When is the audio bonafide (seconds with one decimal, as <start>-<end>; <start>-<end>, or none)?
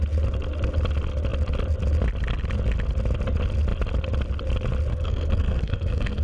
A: 0.0-4.9